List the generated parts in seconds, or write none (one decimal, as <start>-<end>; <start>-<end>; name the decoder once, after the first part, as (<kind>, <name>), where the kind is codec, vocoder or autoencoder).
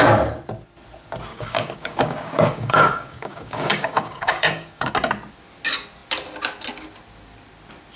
1.3-4.9 (codec, DAC)